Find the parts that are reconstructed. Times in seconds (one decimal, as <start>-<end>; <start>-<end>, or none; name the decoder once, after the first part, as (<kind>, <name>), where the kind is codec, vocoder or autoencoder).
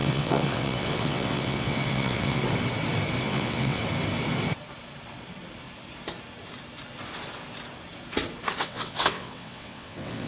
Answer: 0.0-2.4 (vocoder, WaveNeXt); 3.2-3.8; 8.6-10.3